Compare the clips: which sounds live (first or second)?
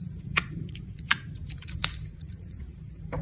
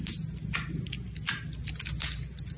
second